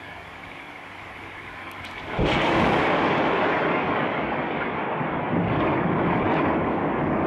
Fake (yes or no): yes